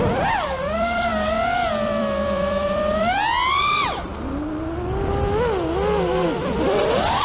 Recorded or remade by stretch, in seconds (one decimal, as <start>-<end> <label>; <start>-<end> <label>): 0.0-1.1 remade; 1.1-1.7 recorded; 1.7-4.1 remade; 4.1-6.6 recorded; 6.6-7.2 remade